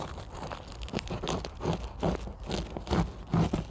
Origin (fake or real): real